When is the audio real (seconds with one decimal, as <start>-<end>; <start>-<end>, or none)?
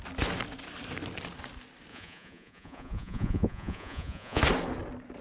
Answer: 0.0-1.9; 4.4-5.2